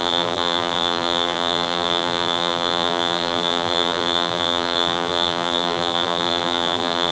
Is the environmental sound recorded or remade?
remade